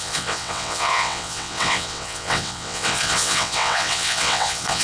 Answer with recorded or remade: remade